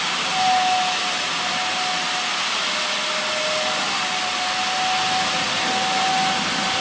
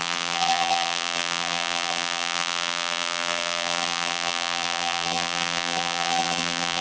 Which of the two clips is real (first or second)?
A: first